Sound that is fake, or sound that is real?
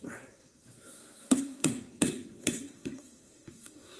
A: fake